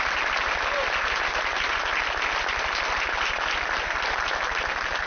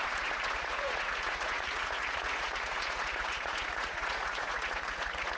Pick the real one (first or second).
first